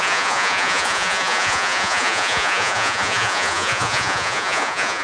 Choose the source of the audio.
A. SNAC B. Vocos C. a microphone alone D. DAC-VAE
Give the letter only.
B